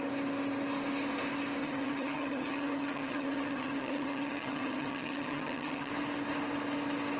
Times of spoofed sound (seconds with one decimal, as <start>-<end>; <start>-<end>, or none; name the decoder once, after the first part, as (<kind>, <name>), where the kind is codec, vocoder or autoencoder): 1.6-5.9 (vocoder, HiFi-GAN)